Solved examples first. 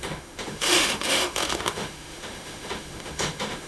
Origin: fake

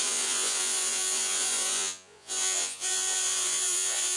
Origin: fake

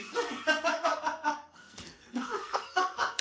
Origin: fake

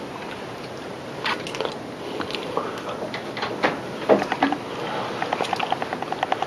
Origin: real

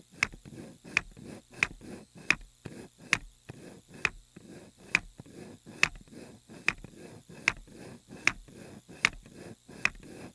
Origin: real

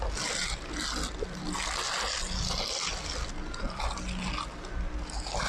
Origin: real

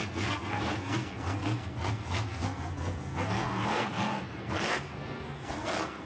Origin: fake